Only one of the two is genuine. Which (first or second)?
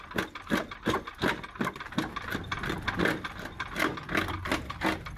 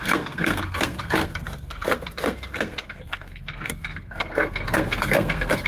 first